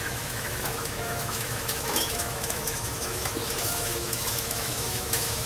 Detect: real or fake fake